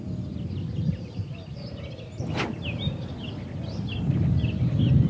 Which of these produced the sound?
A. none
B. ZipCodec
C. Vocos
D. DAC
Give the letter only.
A